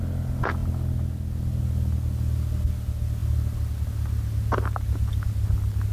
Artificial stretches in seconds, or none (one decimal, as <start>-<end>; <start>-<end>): none